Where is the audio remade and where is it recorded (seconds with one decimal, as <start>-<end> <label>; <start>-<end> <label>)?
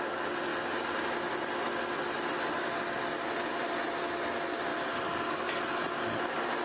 0.0-4.7 recorded; 4.7-5.4 remade; 5.4-6.6 recorded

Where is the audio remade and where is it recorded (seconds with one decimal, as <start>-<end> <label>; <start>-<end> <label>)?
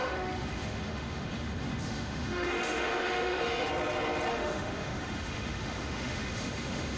0.0-3.7 remade; 3.7-4.3 recorded; 4.3-7.0 remade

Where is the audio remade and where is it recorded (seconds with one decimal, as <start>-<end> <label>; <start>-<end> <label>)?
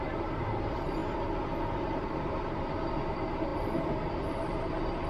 0.0-5.1 remade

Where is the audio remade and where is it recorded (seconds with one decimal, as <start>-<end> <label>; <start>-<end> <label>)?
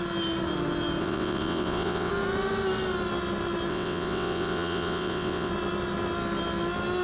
0.0-1.0 recorded; 1.0-2.1 remade; 2.1-3.7 recorded; 3.7-5.5 remade; 5.5-7.0 recorded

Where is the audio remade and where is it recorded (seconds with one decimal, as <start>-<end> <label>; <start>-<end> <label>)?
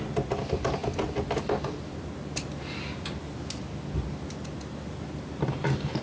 0.0-6.0 recorded